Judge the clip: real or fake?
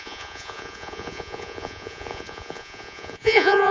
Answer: fake